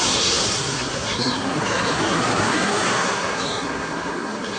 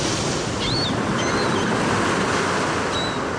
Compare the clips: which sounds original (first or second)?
second